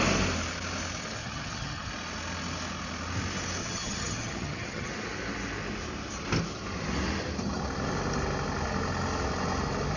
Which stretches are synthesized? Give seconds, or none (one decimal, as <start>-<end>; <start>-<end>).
1.2-1.9; 3.6-4.9